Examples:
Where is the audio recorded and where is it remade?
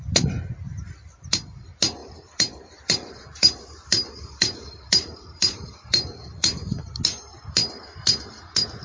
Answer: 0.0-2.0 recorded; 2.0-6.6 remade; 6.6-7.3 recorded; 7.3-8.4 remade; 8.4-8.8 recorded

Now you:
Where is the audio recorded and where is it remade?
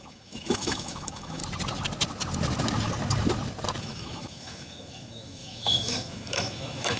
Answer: 0.0-1.4 remade; 1.4-3.8 recorded; 3.8-7.0 remade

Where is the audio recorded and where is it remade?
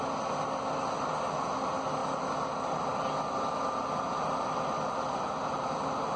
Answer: 0.0-6.2 recorded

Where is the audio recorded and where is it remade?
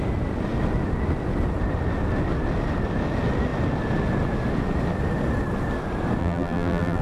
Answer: 0.0-6.2 recorded; 6.2-7.0 remade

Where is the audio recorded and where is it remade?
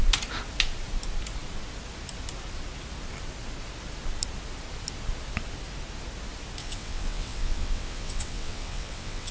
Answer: 0.0-6.6 recorded; 6.6-9.3 remade